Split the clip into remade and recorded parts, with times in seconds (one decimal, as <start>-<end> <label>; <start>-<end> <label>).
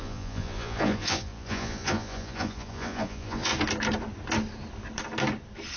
0.0-3.5 remade; 3.5-5.8 recorded